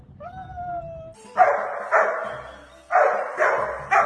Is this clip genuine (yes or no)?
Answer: yes